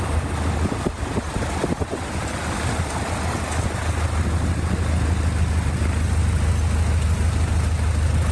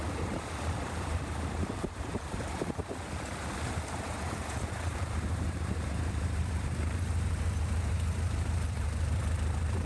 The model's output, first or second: second